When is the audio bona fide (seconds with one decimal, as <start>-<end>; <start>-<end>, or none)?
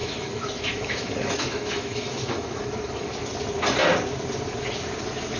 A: 3.2-5.4